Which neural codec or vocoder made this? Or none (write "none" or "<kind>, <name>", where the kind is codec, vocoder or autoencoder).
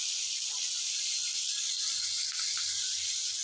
none